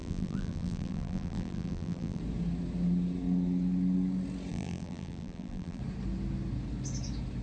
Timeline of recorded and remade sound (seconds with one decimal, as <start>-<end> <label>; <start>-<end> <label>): 0.0-2.2 remade; 2.2-4.5 recorded; 4.5-5.8 remade; 5.8-7.4 recorded